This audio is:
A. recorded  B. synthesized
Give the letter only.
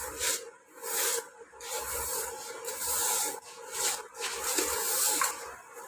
A